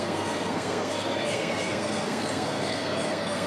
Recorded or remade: remade